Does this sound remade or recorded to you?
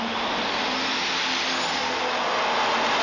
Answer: recorded